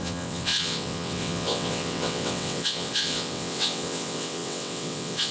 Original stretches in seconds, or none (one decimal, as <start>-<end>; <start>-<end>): none